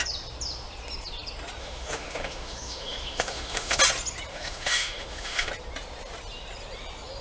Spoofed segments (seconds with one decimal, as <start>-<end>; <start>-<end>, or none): 1.6-3.8; 4.3-5.5